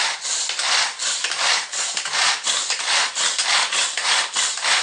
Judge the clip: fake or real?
fake